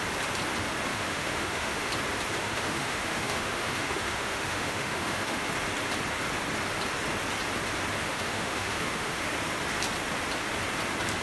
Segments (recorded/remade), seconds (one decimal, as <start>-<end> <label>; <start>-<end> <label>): 0.0-0.9 recorded; 0.9-1.9 remade; 1.9-2.4 recorded; 2.4-5.4 remade; 5.4-8.0 recorded; 8.0-9.3 remade; 9.3-11.2 recorded